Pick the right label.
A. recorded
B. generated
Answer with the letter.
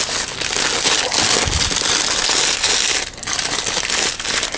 A